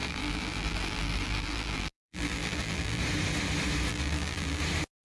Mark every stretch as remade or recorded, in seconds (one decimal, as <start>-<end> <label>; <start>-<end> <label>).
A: 0.0-3.0 remade; 3.0-3.9 recorded; 3.9-4.6 remade; 4.6-5.0 recorded